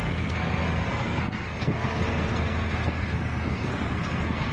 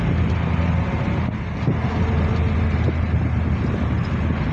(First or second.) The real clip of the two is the second